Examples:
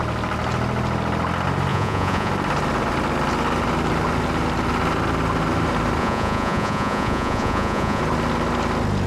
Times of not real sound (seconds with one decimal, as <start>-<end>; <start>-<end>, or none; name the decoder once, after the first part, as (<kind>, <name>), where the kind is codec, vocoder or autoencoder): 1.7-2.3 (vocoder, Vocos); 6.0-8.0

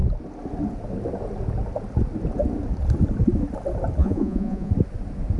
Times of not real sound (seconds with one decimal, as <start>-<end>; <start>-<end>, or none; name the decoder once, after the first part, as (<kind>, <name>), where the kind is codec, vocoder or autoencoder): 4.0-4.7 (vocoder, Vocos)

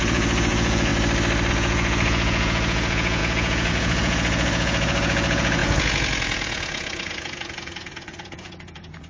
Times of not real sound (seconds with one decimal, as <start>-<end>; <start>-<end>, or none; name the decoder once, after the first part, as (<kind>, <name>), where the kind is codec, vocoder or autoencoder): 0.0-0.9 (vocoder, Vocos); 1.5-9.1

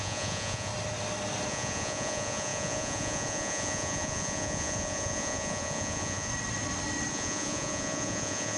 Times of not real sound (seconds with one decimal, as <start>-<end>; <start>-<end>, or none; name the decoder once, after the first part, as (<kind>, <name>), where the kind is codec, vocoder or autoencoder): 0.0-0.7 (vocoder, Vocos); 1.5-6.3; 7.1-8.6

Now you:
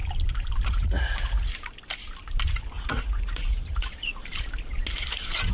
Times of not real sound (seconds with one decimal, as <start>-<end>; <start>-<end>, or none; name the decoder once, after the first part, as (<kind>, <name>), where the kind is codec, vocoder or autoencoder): 0.7-1.5 (vocoder, Vocos); 2.8-4.2